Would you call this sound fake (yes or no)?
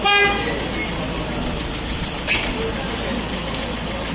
no